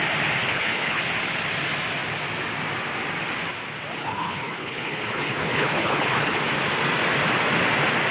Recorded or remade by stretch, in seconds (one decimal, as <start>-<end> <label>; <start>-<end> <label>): 0.0-0.4 recorded; 0.4-1.0 remade; 1.0-4.0 recorded; 4.0-6.4 remade; 6.4-8.1 recorded